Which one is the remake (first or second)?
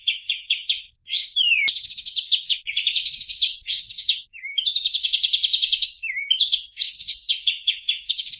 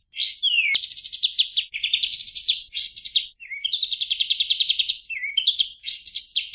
first